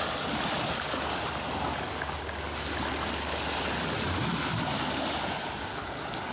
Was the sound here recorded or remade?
recorded